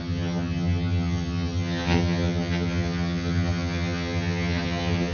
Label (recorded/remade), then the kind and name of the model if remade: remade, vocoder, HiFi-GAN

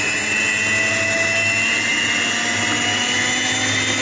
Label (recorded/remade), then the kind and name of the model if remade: recorded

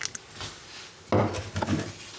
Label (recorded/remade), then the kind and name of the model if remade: recorded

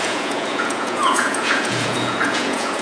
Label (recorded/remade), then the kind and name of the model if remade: remade, vocoder, Vocos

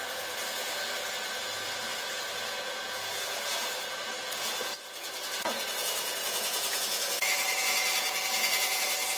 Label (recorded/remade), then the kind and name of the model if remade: remade, vocoder, Vocos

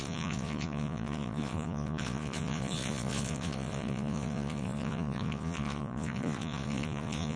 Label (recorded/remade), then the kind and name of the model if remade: remade, vocoder, Vocos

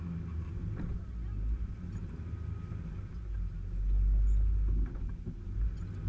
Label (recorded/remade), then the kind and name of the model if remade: recorded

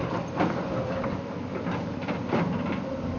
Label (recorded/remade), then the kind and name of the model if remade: recorded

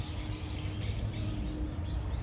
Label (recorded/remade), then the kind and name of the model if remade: recorded